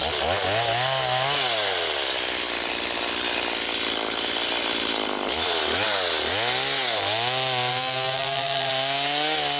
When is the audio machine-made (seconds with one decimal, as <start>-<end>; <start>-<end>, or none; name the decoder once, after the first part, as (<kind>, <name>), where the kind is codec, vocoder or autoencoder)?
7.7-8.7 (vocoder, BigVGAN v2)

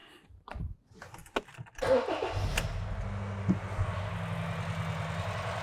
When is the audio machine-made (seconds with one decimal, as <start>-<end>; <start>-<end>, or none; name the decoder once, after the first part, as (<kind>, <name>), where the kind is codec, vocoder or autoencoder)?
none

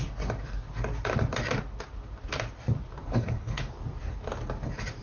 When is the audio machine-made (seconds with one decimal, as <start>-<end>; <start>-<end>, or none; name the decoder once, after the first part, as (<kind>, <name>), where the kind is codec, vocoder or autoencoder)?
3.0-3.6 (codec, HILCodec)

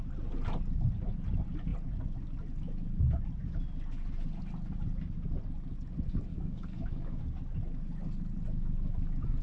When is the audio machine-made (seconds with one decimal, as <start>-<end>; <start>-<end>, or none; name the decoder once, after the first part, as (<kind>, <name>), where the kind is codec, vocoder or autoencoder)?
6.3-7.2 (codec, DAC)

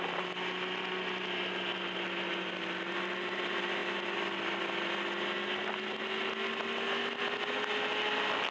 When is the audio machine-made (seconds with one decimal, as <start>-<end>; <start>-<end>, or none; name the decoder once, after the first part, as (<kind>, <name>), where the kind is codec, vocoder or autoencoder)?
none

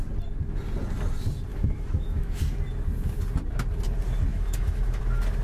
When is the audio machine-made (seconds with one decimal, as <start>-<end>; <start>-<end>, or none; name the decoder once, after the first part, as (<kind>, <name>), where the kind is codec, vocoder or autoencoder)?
1.5-2.4 (autoencoder, DAC-VAE); 4.3-5.0

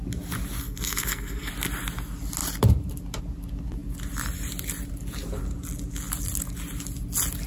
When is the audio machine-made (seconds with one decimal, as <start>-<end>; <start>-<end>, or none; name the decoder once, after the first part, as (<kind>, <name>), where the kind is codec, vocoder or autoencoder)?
0.6-1.5 (codec, SNAC)

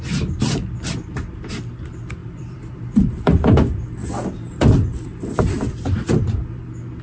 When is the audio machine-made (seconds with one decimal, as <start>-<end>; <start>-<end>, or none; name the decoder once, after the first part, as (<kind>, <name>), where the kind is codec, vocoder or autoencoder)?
2.2-5.4 (vocoder, BigVGAN v2)